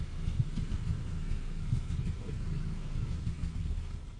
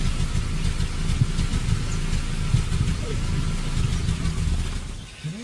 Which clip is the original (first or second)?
second